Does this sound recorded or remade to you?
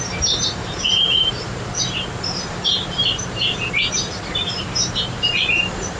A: remade